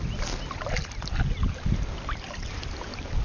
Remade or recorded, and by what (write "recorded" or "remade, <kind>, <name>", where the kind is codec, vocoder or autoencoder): recorded